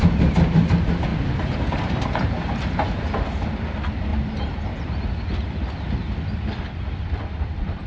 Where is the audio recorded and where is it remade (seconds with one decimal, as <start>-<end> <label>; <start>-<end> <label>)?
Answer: 0.0-1.1 recorded; 1.1-2.6 remade; 2.6-4.1 recorded; 4.1-5.1 remade; 5.1-7.9 recorded